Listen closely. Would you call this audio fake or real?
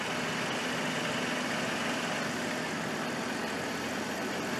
real